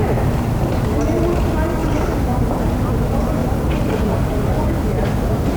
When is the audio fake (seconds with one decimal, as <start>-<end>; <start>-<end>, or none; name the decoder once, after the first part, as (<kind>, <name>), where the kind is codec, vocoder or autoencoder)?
1.8-2.4 (vocoder, BigVGAN v2); 3.4-4.0